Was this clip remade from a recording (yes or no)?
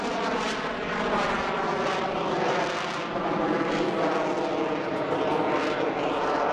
no